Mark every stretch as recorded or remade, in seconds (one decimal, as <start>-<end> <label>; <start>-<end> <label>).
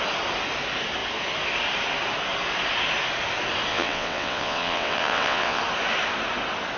0.0-3.7 recorded; 3.7-5.6 remade; 5.6-6.8 recorded